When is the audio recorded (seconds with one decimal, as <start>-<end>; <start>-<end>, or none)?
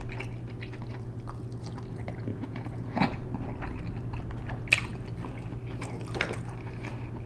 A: 0.0-2.3; 3.3-7.3